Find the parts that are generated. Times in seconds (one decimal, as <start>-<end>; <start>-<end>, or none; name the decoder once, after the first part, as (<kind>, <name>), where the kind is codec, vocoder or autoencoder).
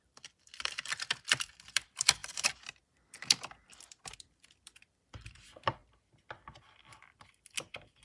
0.0-5.8 (vocoder, BigVGAN v2); 6.6-8.0